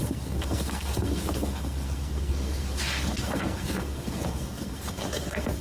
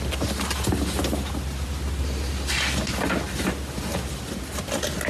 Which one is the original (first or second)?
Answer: second